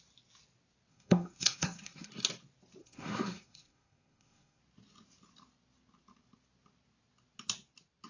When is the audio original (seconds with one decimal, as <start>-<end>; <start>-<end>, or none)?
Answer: 0.0-0.9; 2.1-2.8; 4.6-8.1

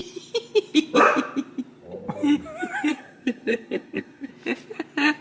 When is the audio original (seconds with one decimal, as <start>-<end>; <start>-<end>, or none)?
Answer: 0.0-2.9; 4.3-5.2